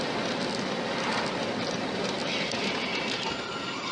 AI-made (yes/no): no